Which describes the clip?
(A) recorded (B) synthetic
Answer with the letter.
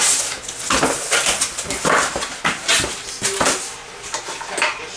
A